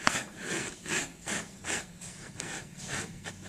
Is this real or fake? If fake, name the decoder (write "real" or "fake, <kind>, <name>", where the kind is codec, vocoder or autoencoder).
fake, codec, SNAC